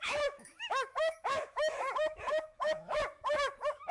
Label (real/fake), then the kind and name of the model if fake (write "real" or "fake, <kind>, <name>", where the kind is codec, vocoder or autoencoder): fake, autoencoder, DAC-VAE